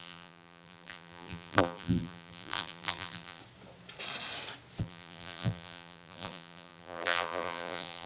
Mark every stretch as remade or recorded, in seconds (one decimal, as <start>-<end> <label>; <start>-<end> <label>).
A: 0.0-3.4 remade; 3.4-4.8 recorded; 4.8-8.1 remade